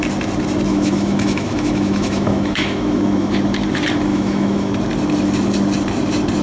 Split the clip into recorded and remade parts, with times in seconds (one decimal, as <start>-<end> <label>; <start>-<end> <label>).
0.0-0.7 recorded; 0.7-3.3 remade; 3.3-4.1 recorded; 4.1-4.7 remade; 4.7-6.4 recorded